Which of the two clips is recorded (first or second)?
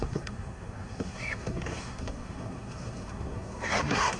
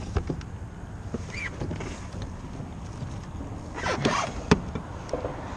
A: second